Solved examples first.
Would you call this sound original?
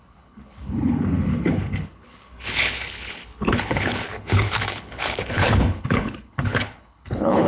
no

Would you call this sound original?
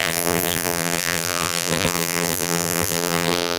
no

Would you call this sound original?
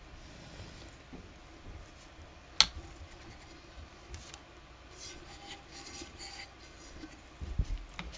yes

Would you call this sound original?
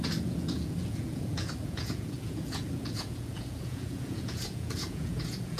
no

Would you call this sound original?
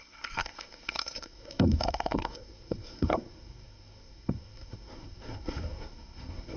no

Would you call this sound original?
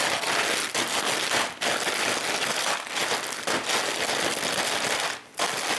yes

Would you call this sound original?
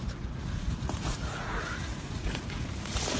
no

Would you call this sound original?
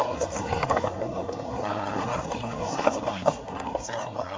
no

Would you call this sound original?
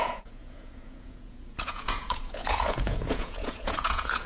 no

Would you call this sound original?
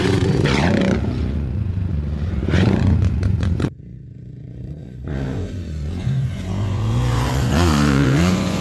no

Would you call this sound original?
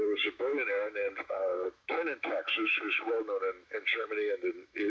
no